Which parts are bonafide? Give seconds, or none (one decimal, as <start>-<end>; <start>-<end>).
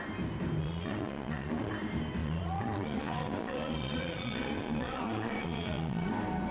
0.0-0.6; 1.7-2.2; 6.1-6.5